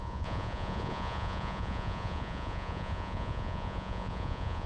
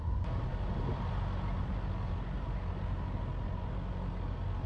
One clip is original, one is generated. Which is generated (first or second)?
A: first